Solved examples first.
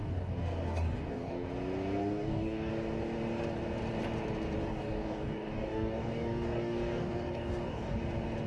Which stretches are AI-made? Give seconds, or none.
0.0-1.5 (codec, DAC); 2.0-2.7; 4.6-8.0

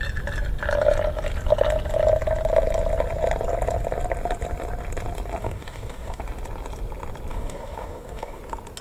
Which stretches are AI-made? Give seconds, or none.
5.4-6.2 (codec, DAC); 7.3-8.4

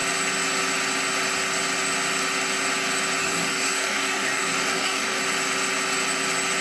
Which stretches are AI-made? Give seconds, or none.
3.2-5.2 (codec, DAC)

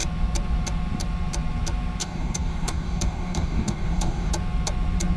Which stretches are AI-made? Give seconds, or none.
2.0-4.3 (codec, DAC)

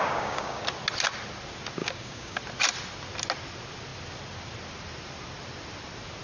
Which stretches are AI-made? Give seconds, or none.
0.0-0.6 (codec, DAC); 1.8-2.4

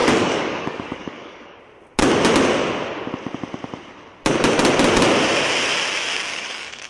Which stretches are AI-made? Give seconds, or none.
0.0-1.6 (codec, DAC); 6.3-6.9